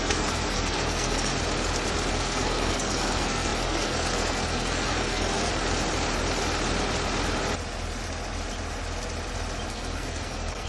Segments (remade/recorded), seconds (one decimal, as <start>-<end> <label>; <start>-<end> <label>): 0.0-1.3 remade; 1.3-2.1 recorded; 2.1-5.5 remade; 5.5-9.7 recorded; 9.7-10.7 remade